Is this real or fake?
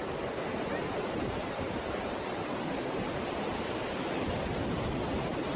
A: fake